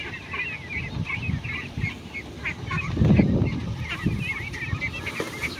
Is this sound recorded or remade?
recorded